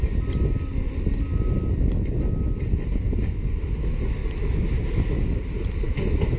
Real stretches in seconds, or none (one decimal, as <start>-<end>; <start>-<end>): 0.0-6.4